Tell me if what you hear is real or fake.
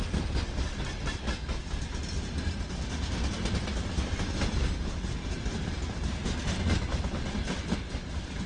real